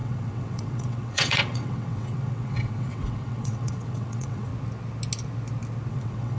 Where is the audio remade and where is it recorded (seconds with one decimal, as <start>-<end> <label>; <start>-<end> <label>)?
0.0-4.5 remade; 4.5-5.9 recorded; 5.9-6.4 remade